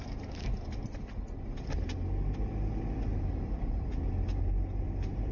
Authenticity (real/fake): real